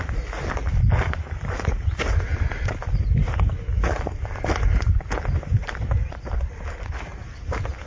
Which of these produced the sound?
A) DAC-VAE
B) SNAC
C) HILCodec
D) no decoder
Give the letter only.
D